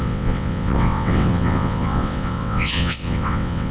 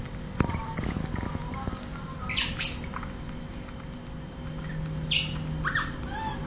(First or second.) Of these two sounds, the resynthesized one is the first